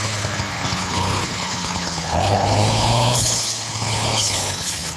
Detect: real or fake fake